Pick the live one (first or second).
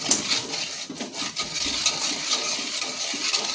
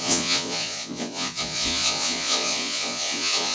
first